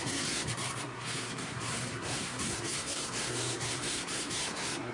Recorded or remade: remade